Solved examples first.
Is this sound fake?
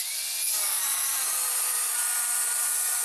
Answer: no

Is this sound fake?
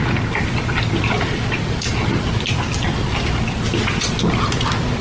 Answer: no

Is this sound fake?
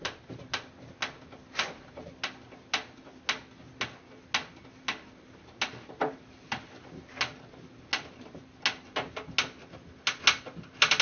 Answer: no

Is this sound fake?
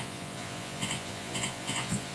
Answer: yes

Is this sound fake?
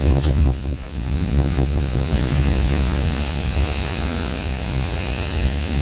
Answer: yes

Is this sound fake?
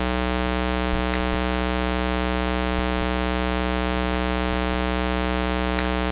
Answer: no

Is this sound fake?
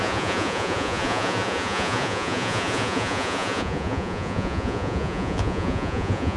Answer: yes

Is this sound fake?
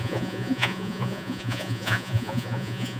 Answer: yes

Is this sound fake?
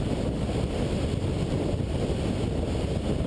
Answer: no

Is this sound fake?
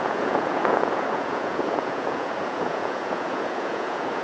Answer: yes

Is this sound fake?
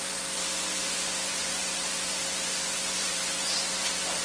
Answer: yes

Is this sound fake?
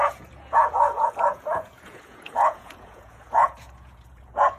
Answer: yes